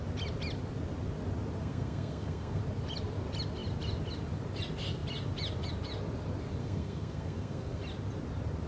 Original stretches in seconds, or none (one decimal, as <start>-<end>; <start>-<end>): 0.0-1.6; 2.6-6.6; 7.8-8.7